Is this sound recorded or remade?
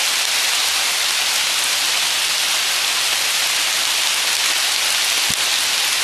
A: recorded